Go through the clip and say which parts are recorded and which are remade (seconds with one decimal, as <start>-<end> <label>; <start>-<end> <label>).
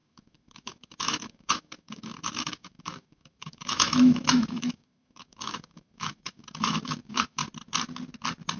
0.0-7.4 remade; 7.4-8.6 recorded